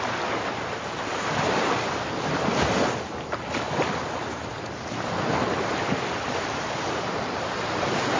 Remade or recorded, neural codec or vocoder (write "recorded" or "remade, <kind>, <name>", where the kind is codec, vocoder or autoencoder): recorded